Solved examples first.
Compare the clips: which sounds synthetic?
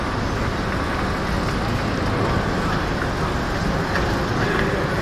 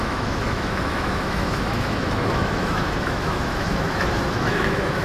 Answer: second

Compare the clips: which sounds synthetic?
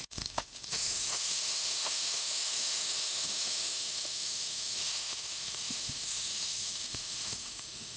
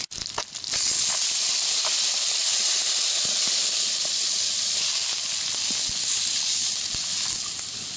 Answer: first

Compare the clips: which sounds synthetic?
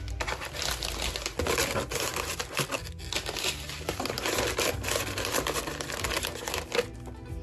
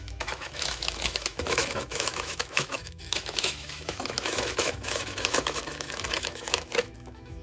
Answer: second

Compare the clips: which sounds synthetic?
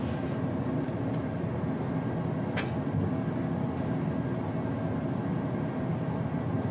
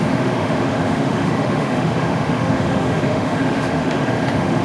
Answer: second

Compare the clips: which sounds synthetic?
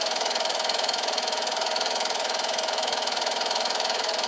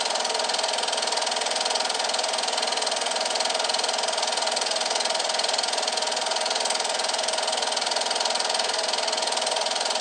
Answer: first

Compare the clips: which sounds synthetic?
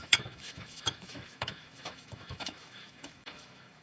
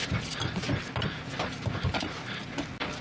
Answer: first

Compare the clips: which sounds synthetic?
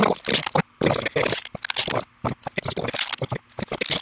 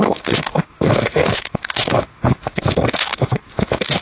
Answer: second